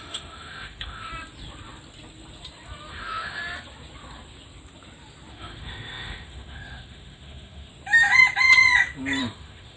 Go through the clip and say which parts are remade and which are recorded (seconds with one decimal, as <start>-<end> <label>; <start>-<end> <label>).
0.0-1.1 remade; 1.1-2.9 recorded; 2.9-3.4 remade; 3.4-5.3 recorded; 5.3-7.7 remade; 7.7-9.2 recorded; 9.2-9.8 remade